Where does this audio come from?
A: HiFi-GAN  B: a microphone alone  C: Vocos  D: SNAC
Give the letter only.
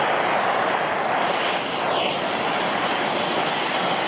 B